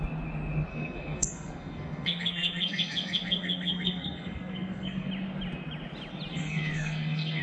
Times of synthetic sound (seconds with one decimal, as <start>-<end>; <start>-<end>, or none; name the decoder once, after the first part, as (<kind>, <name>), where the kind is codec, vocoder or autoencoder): 0.7-5.1 (codec, SNAC); 6.3-7.4